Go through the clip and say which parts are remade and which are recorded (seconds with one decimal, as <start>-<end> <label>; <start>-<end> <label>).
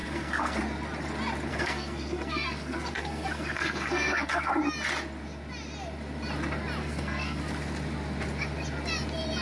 0.0-0.6 remade; 0.6-1.5 recorded; 1.5-4.5 remade; 4.5-6.8 recorded; 6.8-7.4 remade; 7.4-9.4 recorded